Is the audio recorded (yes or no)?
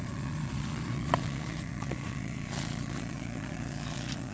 no